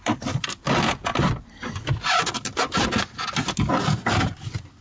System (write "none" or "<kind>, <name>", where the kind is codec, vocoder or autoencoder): none